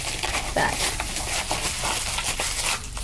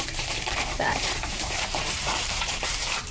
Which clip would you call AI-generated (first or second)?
second